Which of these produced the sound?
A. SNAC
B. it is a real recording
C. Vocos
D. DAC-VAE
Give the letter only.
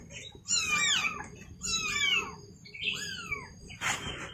B